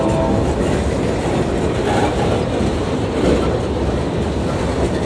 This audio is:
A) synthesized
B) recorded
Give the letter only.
B